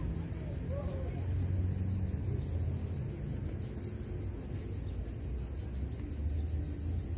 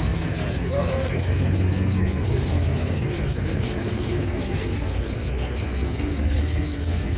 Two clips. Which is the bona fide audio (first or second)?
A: first